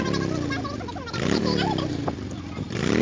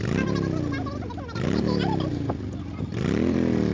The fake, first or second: first